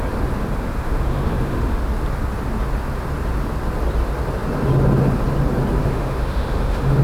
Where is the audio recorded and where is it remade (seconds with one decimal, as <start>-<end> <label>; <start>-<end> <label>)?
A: 0.0-0.4 recorded; 0.4-1.8 remade; 1.8-5.8 recorded; 5.8-7.0 remade